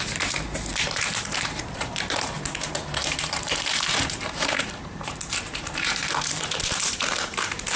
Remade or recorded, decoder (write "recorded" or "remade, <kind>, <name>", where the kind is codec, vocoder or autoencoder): remade, vocoder, BigVGAN v2